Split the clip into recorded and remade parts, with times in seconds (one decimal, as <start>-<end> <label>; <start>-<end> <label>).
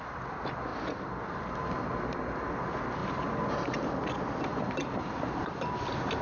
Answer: 0.0-0.7 remade; 0.7-1.4 recorded; 1.4-4.5 remade; 4.5-5.1 recorded; 5.1-6.2 remade